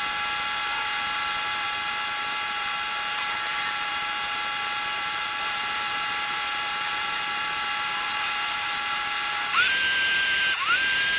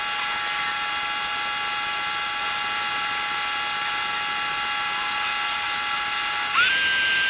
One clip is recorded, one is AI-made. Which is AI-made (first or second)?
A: first